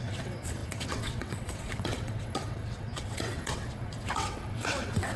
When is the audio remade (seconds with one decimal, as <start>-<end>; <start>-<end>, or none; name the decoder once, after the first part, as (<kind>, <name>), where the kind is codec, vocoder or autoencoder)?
0.0-5.2 (vocoder, WaveNeXt)